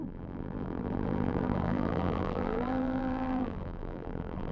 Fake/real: fake